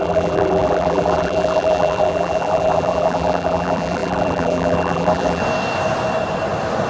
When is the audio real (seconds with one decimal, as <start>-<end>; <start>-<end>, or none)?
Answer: 5.4-6.9